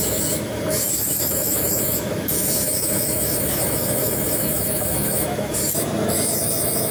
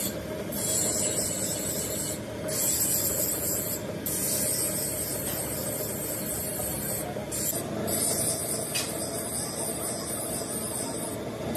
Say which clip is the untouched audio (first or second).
second